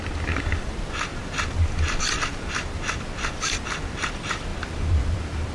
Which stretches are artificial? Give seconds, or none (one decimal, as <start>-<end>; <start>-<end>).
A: none